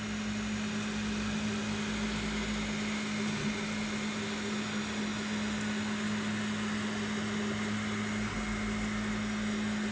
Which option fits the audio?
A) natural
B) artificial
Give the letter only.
A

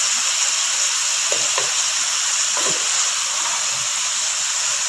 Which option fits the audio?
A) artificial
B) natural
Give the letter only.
B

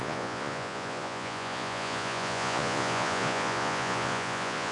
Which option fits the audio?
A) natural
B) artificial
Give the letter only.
B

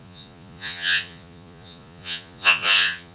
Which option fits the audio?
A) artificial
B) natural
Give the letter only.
A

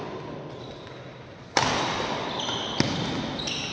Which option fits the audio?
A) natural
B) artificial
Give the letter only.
A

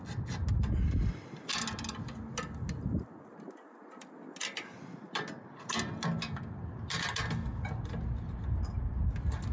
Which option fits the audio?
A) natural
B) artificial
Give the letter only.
A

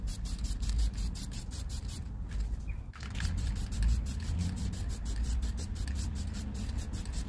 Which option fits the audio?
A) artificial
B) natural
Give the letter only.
B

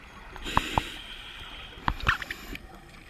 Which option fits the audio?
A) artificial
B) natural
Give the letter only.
A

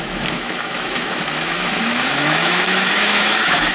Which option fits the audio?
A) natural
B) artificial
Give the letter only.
B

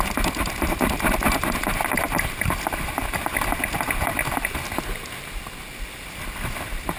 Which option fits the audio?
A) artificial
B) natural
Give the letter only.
B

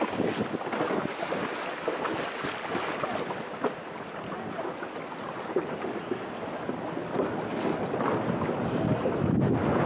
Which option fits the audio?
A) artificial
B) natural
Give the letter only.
B